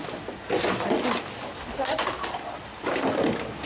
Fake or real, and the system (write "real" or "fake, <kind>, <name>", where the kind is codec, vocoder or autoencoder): real